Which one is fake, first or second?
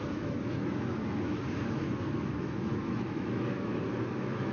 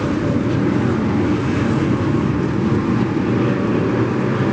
first